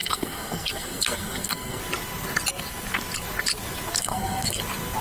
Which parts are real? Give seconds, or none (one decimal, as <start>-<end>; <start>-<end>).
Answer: 1.8-4.0; 4.6-5.0